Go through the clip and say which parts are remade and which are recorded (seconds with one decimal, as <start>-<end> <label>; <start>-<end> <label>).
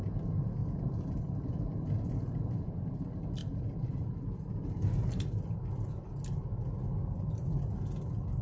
0.0-0.6 recorded; 0.6-2.9 remade; 2.9-3.4 recorded; 3.4-5.9 remade; 5.9-8.4 recorded